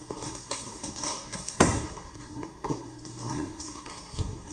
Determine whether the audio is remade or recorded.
remade